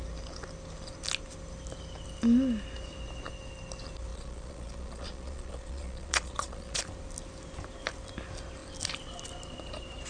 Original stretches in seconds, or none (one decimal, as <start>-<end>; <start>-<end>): 0.0-4.1; 6.8-10.1